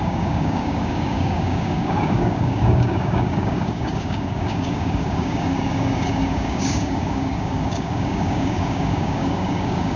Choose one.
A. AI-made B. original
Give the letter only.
A